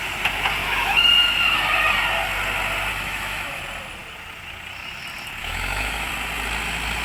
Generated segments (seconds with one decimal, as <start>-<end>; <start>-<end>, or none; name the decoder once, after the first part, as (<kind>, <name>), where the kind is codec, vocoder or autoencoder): 0.6-1.1 (autoencoder, DAC-VAE); 2.9-3.6; 5.4-6.1